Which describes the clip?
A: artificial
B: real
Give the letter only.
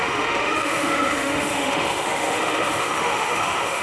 A